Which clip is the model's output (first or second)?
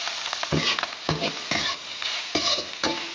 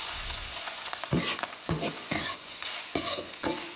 second